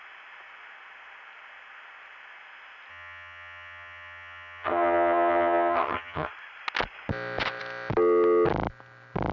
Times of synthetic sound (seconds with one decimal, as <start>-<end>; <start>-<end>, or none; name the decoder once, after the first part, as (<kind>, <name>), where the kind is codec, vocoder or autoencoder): 2.9-6.3 (vocoder, HiFi-GAN)